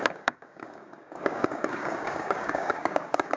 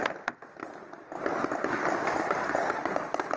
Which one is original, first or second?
second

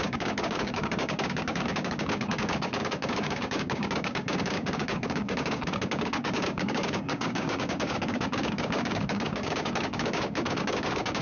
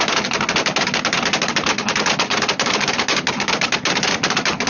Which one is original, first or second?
second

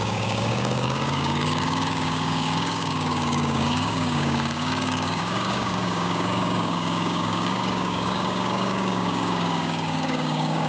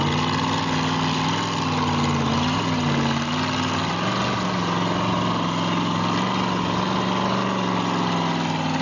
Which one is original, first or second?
second